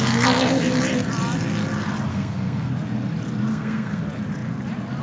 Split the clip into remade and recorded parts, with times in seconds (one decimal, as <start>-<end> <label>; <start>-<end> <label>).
0.0-2.1 recorded; 2.1-2.7 remade; 2.7-3.5 recorded; 3.5-4.0 remade; 4.0-5.0 recorded